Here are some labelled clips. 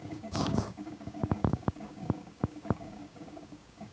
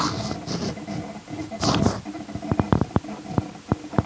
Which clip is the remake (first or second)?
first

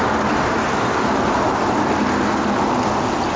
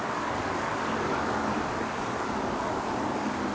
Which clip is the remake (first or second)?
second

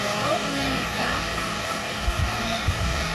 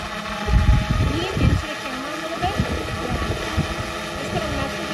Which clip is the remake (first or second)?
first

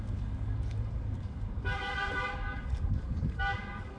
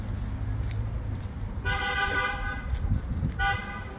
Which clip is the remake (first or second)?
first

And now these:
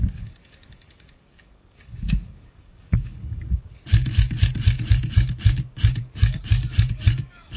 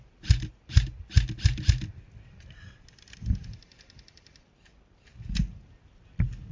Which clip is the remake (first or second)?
first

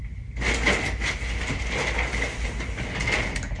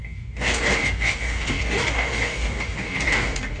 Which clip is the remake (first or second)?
second